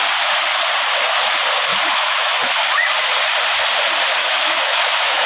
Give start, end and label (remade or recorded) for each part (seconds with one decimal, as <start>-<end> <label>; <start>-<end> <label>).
0.0-1.7 recorded; 1.7-2.5 remade; 2.5-4.2 recorded; 4.2-5.3 remade